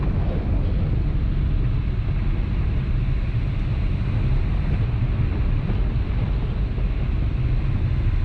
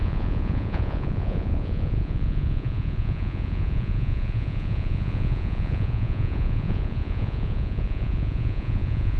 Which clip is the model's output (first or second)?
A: second